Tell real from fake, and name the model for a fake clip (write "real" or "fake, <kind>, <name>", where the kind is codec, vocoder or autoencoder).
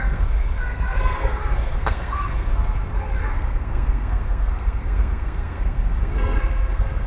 fake, codec, SNAC